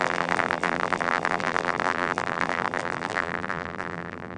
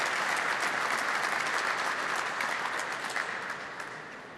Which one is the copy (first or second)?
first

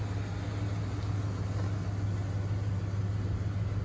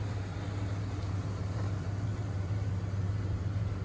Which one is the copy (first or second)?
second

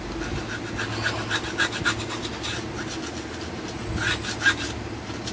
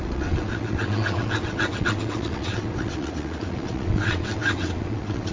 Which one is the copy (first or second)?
second